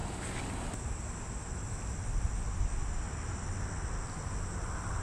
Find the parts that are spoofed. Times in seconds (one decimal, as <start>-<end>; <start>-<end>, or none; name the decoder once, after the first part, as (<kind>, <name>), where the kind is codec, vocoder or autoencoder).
none